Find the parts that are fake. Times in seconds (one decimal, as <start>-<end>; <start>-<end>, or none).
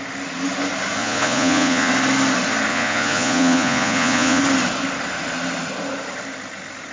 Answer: 1.0-1.9; 2.7-4.4